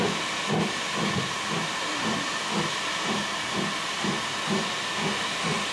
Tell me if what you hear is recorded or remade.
recorded